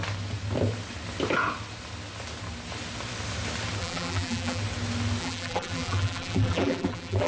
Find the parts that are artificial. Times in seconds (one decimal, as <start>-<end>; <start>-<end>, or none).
3.8-4.6; 5.2-7.3